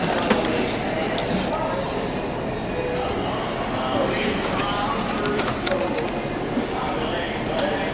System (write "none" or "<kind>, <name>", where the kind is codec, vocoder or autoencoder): none